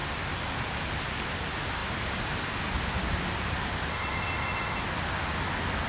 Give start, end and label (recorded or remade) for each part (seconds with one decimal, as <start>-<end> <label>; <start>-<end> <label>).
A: 0.0-3.9 recorded; 3.9-4.8 remade; 4.8-5.9 recorded